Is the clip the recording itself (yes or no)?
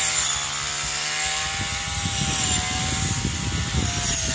no